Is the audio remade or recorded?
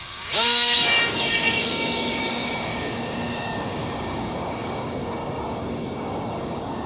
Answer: remade